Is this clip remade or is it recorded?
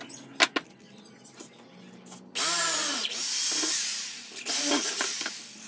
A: recorded